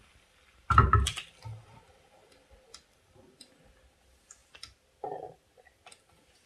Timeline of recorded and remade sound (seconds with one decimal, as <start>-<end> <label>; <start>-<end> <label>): 0.0-3.4 remade; 3.4-6.5 recorded